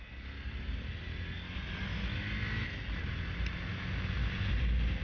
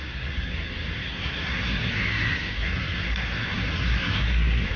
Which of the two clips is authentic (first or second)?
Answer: first